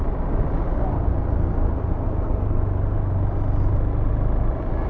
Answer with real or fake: real